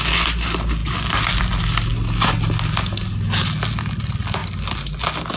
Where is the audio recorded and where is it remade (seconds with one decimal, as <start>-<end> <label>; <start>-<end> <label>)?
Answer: 0.0-5.4 recorded